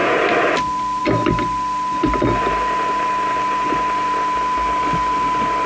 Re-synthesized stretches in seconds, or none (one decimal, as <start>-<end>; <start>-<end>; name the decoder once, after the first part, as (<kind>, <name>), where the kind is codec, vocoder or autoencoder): none